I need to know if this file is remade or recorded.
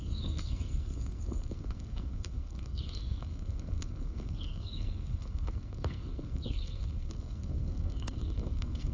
remade